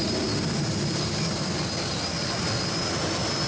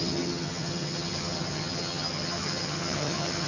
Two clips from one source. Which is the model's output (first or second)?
second